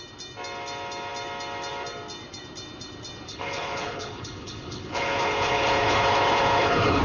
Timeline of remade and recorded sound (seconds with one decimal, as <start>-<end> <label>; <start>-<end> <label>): 0.0-3.3 recorded; 3.3-7.0 remade